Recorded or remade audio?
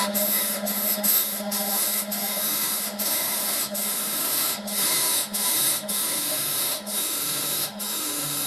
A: remade